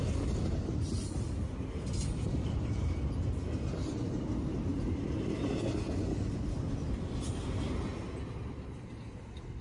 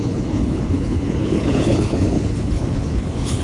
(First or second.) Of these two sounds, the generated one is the second